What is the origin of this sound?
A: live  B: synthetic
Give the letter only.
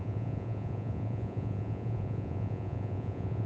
B